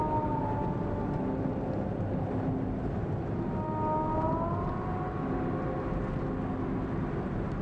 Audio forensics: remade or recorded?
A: recorded